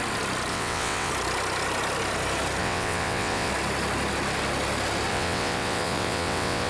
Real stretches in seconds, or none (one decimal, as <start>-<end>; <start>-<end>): 0.0-0.5; 1.1-2.6; 3.5-5.1